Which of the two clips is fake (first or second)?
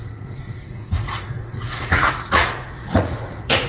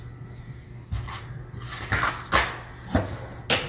first